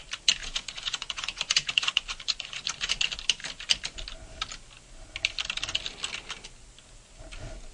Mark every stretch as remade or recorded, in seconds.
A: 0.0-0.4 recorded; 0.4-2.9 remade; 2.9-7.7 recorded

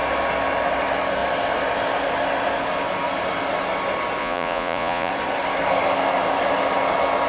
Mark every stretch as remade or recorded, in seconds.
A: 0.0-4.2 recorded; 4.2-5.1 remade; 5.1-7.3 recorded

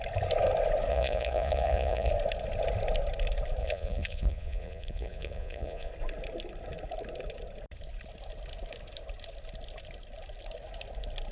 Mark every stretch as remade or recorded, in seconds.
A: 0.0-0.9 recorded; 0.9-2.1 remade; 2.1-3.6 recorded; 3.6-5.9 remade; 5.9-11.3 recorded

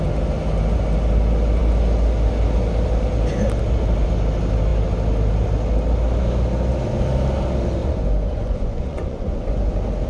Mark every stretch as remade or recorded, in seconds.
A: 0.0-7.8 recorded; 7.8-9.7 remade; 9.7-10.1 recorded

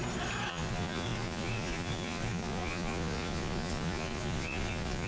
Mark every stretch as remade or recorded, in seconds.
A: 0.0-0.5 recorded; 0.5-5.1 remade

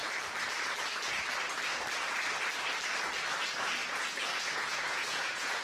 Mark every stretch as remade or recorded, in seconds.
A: 0.0-3.8 recorded; 3.8-5.6 remade

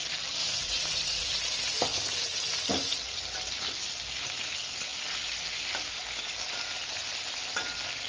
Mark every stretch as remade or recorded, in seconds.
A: 0.0-0.4 recorded; 0.4-1.3 remade; 1.3-8.1 recorded

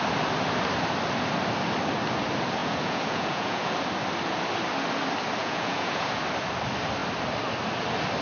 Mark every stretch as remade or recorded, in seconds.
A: 0.0-2.6 recorded; 2.6-3.7 remade; 3.7-5.4 recorded; 5.4-6.2 remade; 6.2-8.2 recorded